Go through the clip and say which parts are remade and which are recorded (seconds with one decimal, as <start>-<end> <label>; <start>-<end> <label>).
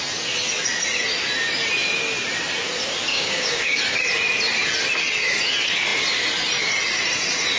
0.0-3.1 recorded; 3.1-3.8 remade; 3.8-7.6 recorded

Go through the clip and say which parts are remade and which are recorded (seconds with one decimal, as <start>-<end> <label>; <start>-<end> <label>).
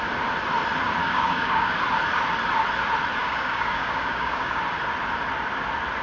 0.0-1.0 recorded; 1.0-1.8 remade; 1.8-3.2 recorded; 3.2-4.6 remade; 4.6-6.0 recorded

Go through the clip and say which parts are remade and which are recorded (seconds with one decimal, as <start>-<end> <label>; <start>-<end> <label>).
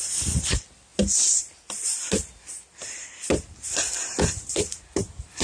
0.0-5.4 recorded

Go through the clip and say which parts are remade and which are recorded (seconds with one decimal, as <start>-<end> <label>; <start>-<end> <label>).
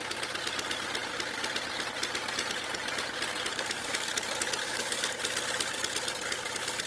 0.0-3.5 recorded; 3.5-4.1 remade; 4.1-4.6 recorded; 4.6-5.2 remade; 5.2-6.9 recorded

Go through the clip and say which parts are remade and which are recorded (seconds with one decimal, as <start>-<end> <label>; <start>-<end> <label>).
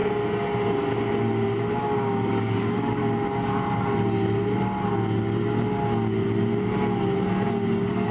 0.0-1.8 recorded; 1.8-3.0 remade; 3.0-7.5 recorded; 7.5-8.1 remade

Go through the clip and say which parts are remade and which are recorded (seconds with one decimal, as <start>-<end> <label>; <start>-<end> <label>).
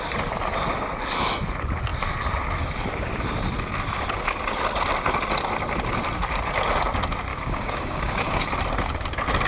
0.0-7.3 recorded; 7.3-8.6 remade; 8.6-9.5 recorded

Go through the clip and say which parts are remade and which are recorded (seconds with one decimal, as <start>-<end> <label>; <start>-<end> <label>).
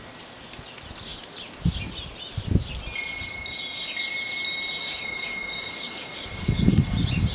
0.0-4.8 recorded; 4.8-6.5 remade; 6.5-7.3 recorded